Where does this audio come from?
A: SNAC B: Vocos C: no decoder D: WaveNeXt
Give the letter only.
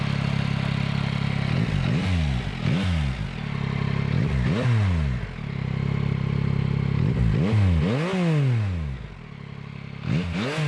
C